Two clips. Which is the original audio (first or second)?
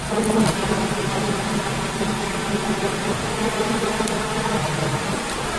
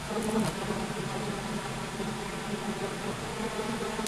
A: second